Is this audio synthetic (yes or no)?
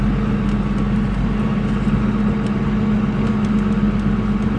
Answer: no